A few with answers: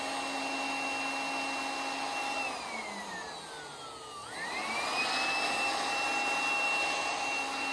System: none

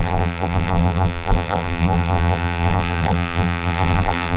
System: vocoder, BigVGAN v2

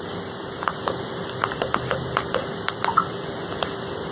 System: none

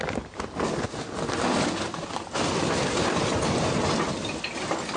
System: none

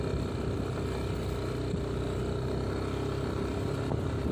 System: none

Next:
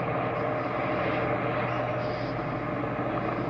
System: none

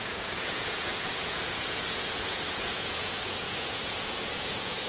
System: vocoder, Vocos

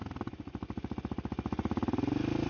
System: none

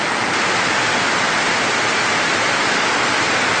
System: none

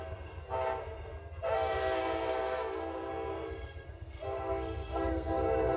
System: codec, SNAC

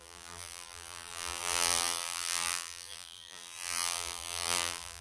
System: vocoder, BigVGAN v2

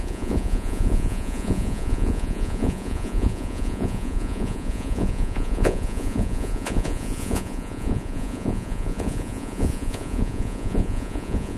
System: vocoder, Vocos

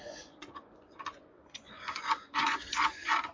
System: vocoder, Vocos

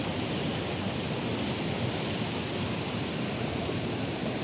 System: none